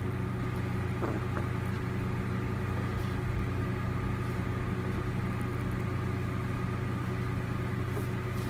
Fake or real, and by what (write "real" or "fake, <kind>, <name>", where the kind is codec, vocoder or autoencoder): real